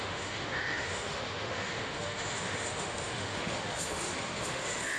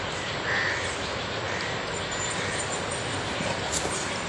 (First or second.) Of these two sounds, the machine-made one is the first